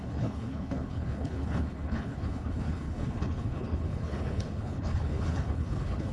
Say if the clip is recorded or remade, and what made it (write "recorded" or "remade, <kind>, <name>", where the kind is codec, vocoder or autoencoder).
remade, codec, HILCodec